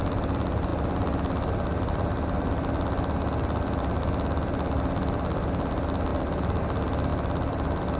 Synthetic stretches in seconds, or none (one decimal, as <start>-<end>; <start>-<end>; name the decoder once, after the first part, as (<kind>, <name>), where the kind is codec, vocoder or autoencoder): none